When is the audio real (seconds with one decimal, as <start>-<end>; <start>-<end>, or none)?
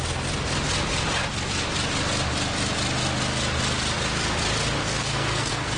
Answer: 0.0-4.8